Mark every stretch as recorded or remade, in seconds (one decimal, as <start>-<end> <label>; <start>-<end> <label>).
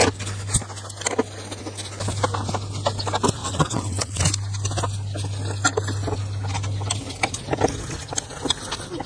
0.0-3.4 recorded; 3.4-4.2 remade; 4.2-9.1 recorded